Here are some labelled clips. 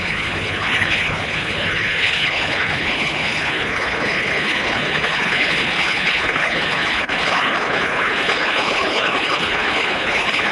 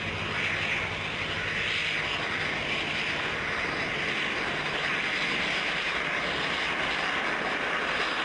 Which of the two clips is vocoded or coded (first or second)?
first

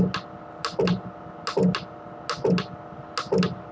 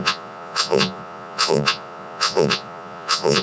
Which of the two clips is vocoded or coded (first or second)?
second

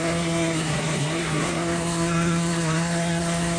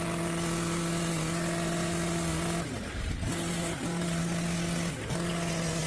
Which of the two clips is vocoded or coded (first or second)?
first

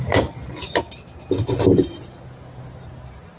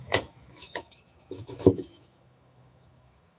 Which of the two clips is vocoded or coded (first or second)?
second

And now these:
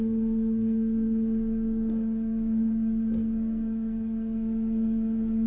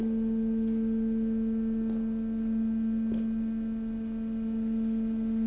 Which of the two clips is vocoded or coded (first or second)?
first